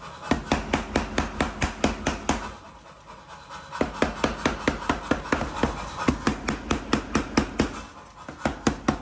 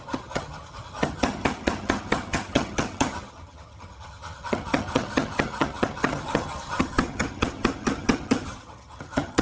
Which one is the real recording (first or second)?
first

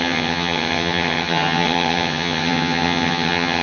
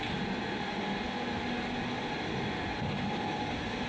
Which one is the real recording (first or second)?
second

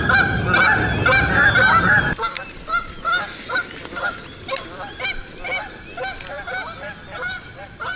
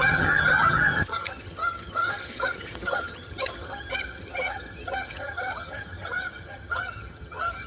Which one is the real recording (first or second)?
first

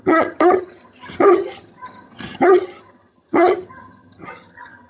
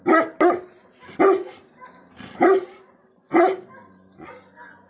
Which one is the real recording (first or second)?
second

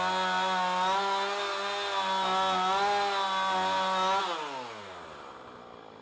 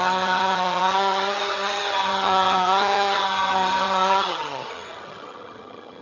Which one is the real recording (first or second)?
first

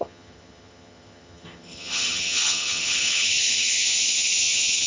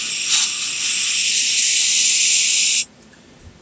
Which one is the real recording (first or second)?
second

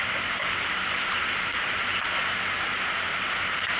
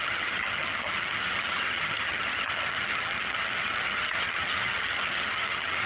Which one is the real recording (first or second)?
first